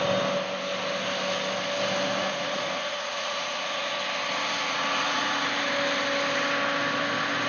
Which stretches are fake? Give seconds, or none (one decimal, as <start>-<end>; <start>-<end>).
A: 2.2-3.9; 4.6-5.4